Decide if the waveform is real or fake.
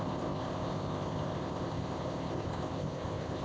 fake